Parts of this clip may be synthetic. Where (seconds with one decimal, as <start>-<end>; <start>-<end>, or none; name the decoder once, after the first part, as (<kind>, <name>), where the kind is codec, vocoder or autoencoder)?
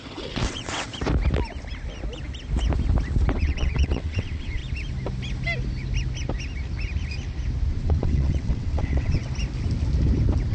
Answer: 0.0-0.9 (vocoder, WaveNeXt); 3.4-4.6; 7.7-9.2